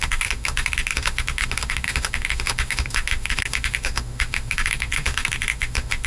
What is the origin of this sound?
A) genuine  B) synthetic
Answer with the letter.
B